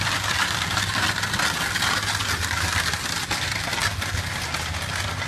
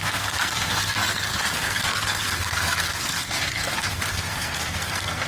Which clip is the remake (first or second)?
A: second